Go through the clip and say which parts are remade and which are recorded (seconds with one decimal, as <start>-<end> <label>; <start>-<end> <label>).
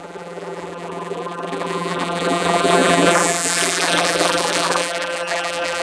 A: 0.0-5.8 remade